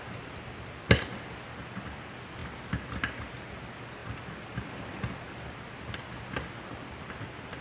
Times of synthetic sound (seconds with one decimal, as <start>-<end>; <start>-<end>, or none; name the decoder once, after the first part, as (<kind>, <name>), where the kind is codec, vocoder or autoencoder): 2.4-3.3 (vocoder, BigVGAN v2); 4.0-5.5